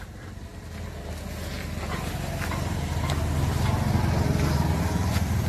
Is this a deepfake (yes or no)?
no